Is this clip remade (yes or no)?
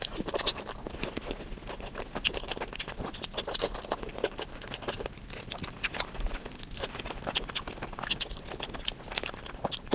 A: no